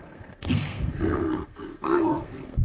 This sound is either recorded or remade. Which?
remade